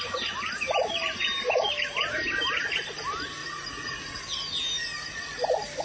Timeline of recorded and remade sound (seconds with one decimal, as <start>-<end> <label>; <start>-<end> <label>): 0.0-3.4 recorded; 3.4-4.2 remade; 4.2-5.8 recorded